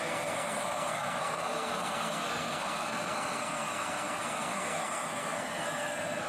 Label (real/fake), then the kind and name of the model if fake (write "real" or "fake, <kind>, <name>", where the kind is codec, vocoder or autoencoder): fake, codec, SNAC